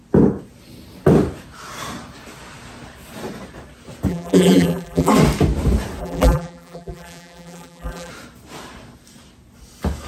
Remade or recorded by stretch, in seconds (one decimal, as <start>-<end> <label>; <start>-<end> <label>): 0.0-4.1 recorded; 4.1-5.1 remade; 5.1-6.0 recorded; 6.0-8.1 remade; 8.1-10.1 recorded